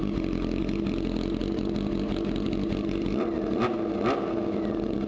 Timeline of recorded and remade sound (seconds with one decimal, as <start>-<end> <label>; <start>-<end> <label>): 0.0-5.1 recorded